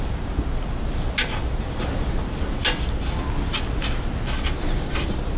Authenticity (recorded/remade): recorded